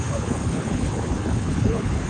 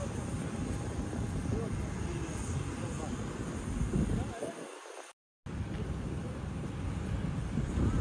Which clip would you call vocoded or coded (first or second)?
first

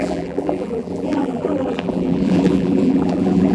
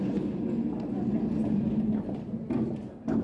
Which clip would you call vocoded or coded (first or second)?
first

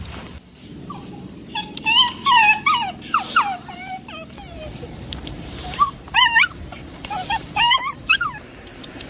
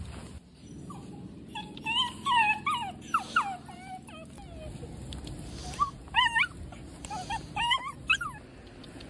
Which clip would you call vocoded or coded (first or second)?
first